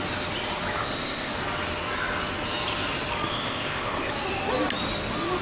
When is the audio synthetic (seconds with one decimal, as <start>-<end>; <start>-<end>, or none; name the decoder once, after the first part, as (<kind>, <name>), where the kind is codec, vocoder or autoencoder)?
0.8-1.3 (codec, ZipCodec); 3.3-4.1

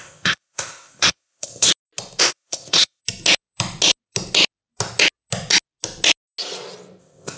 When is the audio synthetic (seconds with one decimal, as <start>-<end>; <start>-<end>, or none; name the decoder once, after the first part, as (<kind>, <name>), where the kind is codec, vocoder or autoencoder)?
0.0-1.7 (codec, ZipCodec); 2.2-3.0; 7.0-7.4

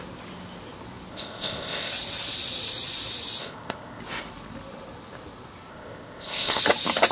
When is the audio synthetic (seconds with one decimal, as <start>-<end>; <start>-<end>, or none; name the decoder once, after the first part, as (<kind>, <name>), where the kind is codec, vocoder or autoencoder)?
1.1-1.9 (codec, ZipCodec); 3.4-4.0; 5.7-6.6

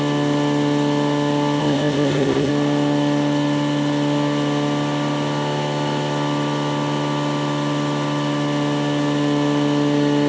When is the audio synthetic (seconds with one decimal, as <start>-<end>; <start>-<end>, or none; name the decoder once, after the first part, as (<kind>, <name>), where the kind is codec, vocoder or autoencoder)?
1.6-2.5 (codec, ZipCodec)

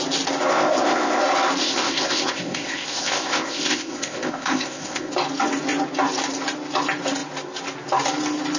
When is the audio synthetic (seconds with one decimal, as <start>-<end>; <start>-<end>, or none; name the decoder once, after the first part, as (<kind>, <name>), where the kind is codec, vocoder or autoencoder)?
0.5-1.2 (codec, ZipCodec); 1.6-5.1

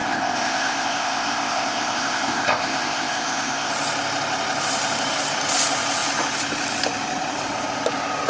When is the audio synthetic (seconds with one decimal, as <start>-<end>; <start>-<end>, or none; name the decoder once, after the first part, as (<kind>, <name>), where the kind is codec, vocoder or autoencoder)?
0.0-3.7 (codec, ZipCodec)

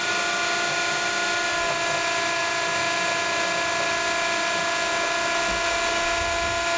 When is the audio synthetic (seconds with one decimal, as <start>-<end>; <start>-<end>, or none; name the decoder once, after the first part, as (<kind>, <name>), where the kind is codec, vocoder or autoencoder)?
none

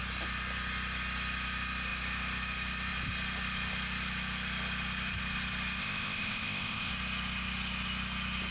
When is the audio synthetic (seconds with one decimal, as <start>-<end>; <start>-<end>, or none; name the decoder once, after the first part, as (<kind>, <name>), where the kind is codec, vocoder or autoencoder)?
5.8-6.9 (codec, ZipCodec)